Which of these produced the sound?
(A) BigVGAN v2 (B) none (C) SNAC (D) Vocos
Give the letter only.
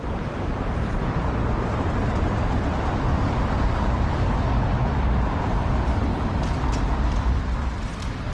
A